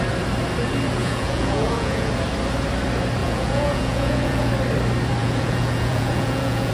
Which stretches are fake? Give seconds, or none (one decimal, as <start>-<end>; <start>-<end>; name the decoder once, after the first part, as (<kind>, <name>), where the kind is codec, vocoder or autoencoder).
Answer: 1.0-2.1 (vocoder, Vocos); 3.2-4.5; 5.2-6.7